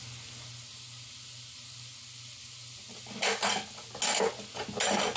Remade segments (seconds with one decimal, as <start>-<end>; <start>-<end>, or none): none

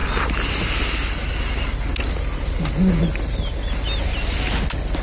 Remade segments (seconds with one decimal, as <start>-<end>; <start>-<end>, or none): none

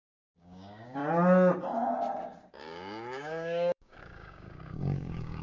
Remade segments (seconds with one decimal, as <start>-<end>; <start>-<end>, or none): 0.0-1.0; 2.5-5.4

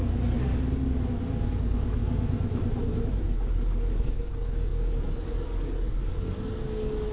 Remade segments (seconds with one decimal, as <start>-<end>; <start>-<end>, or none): 0.0-0.5; 1.5-2.0; 3.1-7.1